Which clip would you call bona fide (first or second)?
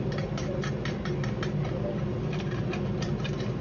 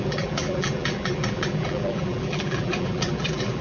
first